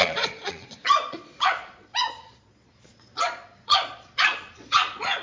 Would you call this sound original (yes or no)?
no